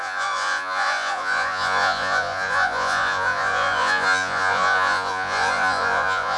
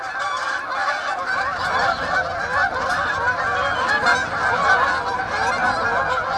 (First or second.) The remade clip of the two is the first